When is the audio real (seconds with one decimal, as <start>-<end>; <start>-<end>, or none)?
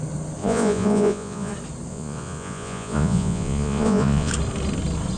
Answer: 0.0-0.4; 1.5-1.9; 4.3-5.2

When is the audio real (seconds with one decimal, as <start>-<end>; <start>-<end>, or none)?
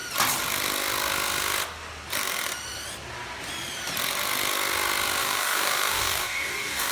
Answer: 0.0-5.2